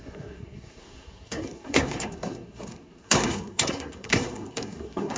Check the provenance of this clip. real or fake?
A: fake